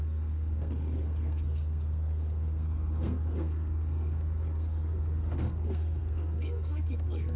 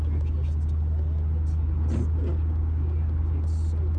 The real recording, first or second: second